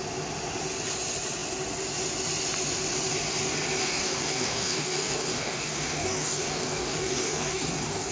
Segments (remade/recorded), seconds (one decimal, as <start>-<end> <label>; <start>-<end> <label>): 0.0-3.8 recorded; 3.8-8.1 remade